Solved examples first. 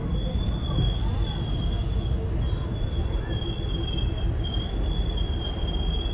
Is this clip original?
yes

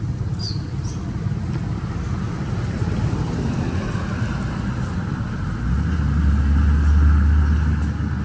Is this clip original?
yes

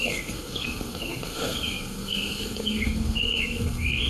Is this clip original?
no